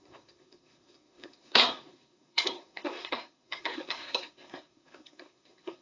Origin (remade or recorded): remade